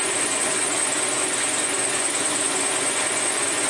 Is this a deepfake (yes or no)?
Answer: yes